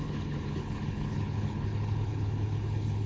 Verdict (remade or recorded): remade